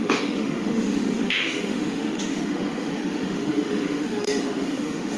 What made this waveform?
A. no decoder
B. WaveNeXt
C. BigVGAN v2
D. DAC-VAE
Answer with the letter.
D